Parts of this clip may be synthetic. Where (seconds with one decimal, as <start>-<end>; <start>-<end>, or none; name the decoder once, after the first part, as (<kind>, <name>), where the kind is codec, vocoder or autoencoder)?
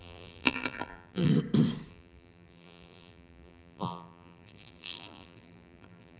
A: 0.0-1.3 (vocoder, BigVGAN v2); 1.9-6.2